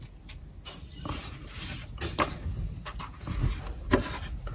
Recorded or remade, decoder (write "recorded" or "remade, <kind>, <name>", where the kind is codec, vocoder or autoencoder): recorded